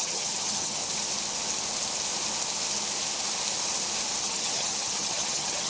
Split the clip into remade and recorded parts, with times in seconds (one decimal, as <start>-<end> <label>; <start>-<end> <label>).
0.0-0.8 remade; 0.8-4.2 recorded; 4.2-5.7 remade